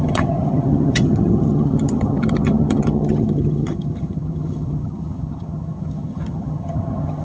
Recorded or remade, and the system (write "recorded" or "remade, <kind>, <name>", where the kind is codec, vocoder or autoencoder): remade, vocoder, HiFi-GAN